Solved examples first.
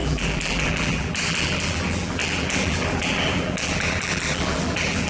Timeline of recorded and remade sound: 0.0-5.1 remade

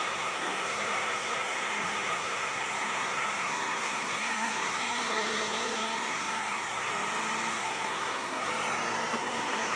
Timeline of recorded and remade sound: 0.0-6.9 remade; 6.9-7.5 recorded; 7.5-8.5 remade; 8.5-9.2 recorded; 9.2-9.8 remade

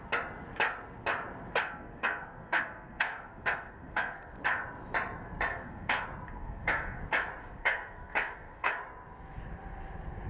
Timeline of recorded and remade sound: 0.0-1.5 recorded; 1.5-4.4 remade; 4.4-5.5 recorded; 5.5-6.0 remade; 6.0-6.4 recorded; 6.4-7.0 remade; 7.0-7.4 recorded; 7.4-8.7 remade; 8.7-10.3 recorded

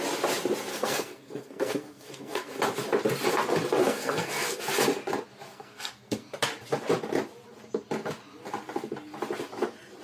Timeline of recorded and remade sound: 0.0-0.7 recorded; 0.7-2.6 remade; 2.6-3.8 recorded; 3.8-4.6 remade; 4.6-5.5 recorded; 5.5-6.3 remade; 6.3-10.0 recorded